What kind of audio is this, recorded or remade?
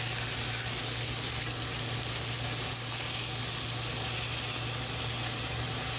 recorded